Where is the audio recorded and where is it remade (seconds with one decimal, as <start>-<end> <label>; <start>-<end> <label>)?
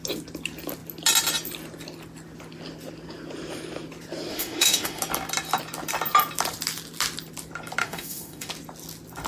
0.0-4.3 recorded; 4.3-5.0 remade; 5.0-7.8 recorded; 7.8-8.5 remade; 8.5-9.3 recorded